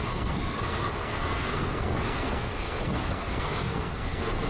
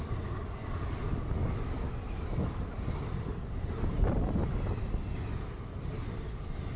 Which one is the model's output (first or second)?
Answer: first